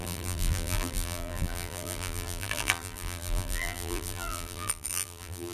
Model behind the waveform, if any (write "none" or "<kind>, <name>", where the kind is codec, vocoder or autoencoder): vocoder, BigVGAN v2